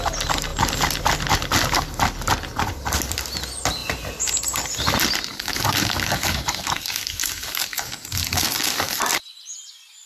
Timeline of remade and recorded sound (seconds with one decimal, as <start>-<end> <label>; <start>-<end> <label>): 0.0-5.3 recorded; 5.3-9.0 remade; 9.0-10.1 recorded